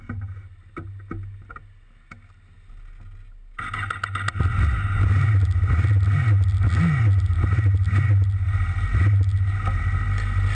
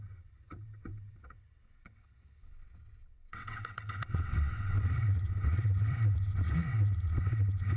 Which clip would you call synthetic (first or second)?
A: second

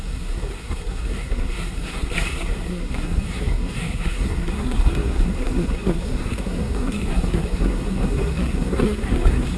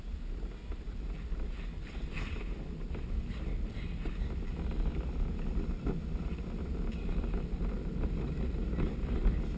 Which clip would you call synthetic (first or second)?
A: first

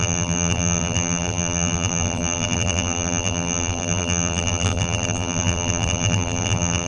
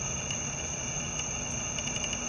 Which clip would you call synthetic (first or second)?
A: first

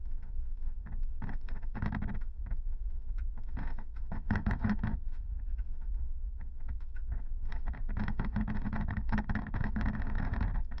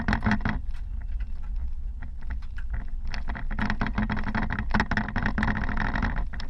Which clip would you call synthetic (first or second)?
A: first